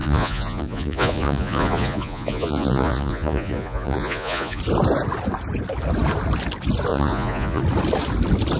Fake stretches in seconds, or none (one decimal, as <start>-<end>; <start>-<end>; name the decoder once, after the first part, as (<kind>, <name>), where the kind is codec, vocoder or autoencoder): 0.0-4.6 (vocoder, Vocos); 6.9-7.6